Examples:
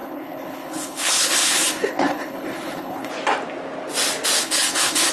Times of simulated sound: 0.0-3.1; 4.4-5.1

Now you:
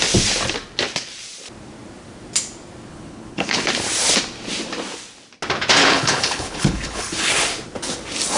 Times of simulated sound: 2.9-3.6; 5.8-7.3

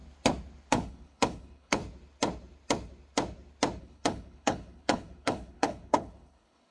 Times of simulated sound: 0.7-1.8; 3.8-6.7

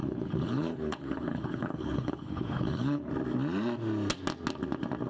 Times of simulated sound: 0.0-3.1